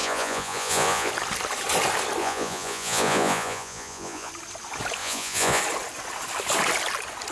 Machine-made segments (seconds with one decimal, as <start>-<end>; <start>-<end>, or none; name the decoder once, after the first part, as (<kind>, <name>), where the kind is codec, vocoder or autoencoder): 0.0-1.1 (vocoder, Vocos); 2.2-4.3; 5.0-5.6